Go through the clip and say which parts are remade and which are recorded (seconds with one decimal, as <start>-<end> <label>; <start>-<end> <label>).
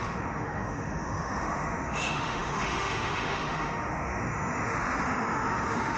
0.0-6.0 remade